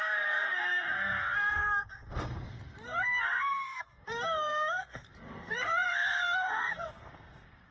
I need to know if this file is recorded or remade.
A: remade